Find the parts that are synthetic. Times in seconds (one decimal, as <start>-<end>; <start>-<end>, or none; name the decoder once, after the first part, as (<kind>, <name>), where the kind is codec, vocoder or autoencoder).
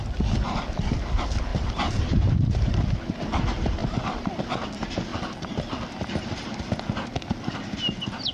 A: 1.5-2.7 (vocoder, BigVGAN v2); 3.8-4.4; 5.1-6.7